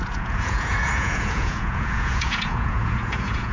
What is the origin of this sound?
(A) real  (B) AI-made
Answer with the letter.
B